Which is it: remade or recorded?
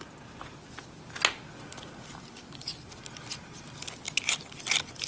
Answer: recorded